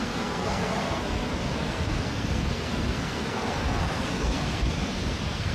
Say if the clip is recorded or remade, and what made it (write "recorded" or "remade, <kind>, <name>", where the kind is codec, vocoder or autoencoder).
remade, codec, SNAC